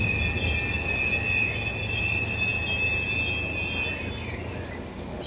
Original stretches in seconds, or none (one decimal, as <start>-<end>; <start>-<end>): 0.0-5.3